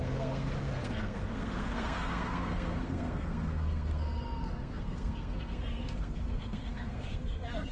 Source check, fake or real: fake